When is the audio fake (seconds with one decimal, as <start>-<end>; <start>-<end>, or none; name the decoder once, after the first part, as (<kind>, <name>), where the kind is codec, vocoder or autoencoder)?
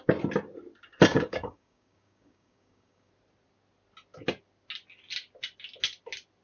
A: 1.1-3.1 (codec, DAC)